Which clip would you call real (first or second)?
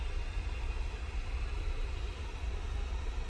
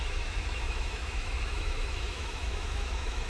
first